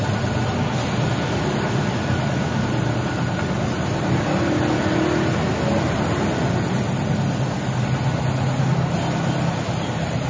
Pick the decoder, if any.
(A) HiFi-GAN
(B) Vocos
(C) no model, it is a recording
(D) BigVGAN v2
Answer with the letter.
C